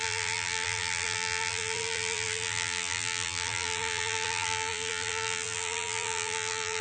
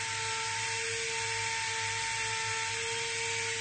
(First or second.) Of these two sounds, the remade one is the first